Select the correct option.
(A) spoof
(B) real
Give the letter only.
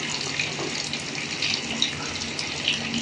B